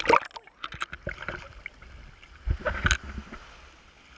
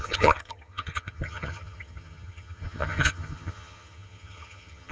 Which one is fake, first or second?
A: second